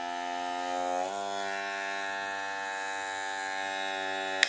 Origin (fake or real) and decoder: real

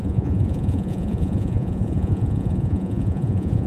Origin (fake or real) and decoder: fake, vocoder, Vocos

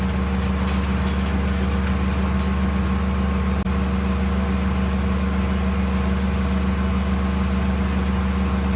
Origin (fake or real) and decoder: real